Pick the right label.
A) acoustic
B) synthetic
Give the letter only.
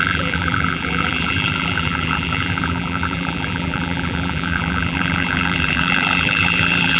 B